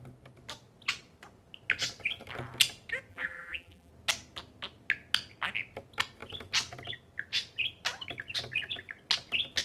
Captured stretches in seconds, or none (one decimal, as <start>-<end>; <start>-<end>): 0.0-3.1; 3.9-9.6